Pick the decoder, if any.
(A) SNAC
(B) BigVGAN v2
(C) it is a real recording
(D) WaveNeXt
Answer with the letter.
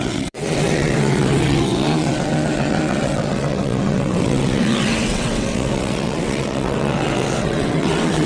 D